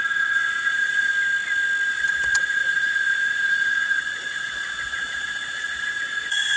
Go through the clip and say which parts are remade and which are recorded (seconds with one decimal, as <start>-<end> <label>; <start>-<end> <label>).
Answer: 0.0-1.1 remade; 1.1-1.9 recorded; 1.9-6.6 remade

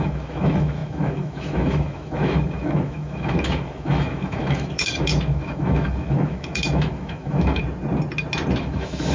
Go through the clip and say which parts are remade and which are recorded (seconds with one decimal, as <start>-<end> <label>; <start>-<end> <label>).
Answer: 0.0-7.6 remade; 7.6-8.6 recorded; 8.6-9.1 remade

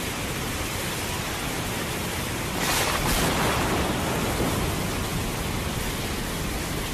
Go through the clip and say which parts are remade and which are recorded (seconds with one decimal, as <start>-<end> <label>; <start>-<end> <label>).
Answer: 0.0-6.9 recorded

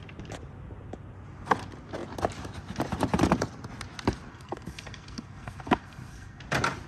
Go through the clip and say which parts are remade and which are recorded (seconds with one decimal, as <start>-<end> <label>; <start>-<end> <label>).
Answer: 0.0-4.3 recorded; 4.3-6.4 remade; 6.4-6.9 recorded

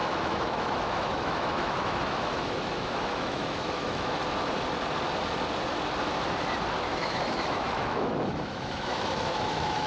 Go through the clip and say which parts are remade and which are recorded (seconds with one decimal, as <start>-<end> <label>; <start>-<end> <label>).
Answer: 0.0-4.2 remade; 4.2-6.9 recorded; 6.9-9.9 remade

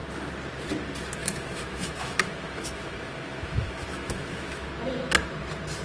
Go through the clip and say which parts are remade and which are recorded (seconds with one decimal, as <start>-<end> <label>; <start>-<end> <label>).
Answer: 0.0-1.2 recorded; 1.2-4.7 remade; 4.7-5.8 recorded

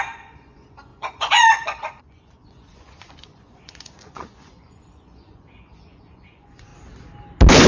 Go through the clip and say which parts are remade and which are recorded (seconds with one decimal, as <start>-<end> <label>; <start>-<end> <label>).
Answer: 0.0-6.7 remade; 6.7-7.7 recorded

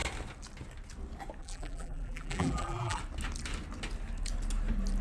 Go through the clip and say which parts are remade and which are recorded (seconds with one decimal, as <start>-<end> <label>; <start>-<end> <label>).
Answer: 0.0-1.4 recorded; 1.4-3.0 remade; 3.0-5.0 recorded